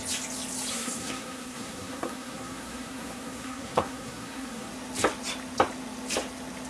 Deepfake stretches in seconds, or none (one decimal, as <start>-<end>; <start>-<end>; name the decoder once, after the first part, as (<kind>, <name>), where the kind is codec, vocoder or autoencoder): 0.7-4.7 (codec, SNAC)